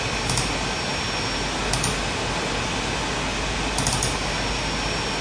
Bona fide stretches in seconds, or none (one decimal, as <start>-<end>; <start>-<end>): 0.0-5.2